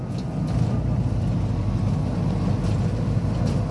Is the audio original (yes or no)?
yes